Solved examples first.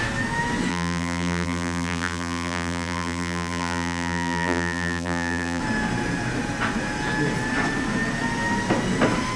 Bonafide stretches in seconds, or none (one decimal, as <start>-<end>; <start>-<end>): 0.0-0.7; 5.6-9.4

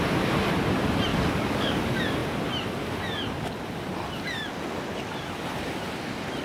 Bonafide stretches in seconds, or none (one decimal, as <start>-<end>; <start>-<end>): 0.0-1.1; 1.8-6.4

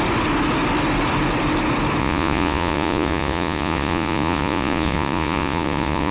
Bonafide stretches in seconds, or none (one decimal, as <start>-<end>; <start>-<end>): 0.0-2.0

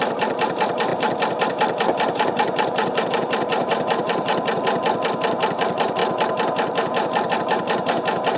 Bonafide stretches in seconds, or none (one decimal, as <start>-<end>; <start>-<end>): 4.3-5.5; 6.0-7.3

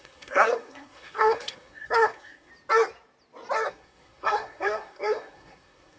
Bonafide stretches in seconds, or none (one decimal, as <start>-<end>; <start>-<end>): 2.5-3.7